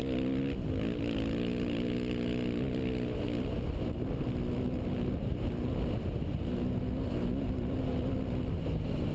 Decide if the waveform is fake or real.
real